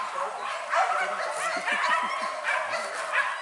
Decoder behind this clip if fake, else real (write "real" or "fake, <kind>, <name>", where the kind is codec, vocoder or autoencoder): real